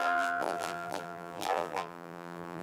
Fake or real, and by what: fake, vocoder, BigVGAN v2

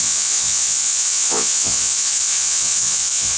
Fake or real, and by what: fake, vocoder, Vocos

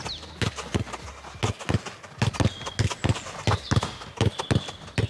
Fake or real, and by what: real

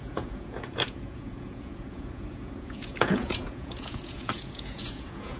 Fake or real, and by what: fake, vocoder, Vocos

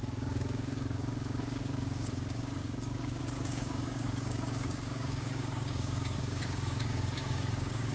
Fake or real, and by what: fake, codec, DAC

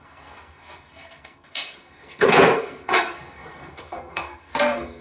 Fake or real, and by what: fake, codec, SNAC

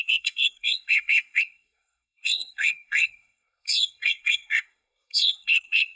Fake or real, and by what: fake, codec, SNAC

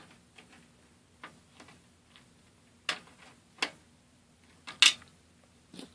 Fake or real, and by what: real